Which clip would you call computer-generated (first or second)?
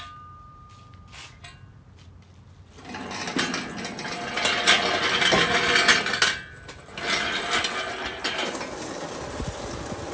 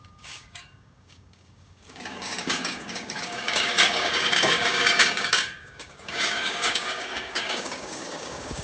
second